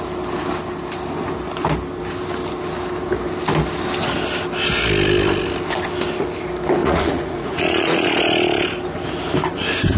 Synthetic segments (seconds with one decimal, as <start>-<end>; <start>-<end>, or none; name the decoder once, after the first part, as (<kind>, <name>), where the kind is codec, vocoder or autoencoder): 6.8-8.1 (vocoder, Vocos)